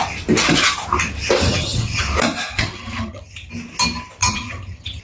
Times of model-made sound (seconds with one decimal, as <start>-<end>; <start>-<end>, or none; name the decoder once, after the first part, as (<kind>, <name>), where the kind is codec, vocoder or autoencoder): 1.5-2.0 (vocoder, HiFi-GAN); 2.5-3.5; 4.2-5.0